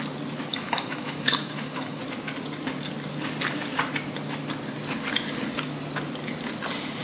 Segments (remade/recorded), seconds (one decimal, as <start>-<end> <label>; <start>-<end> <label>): 0.0-0.5 recorded; 0.5-2.0 remade; 2.0-7.0 recorded